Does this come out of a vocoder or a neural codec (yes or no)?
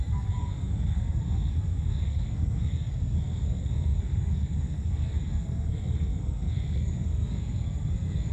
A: yes